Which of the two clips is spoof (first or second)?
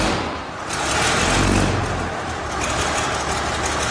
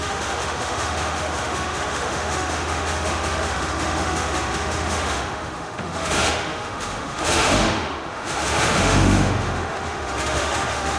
second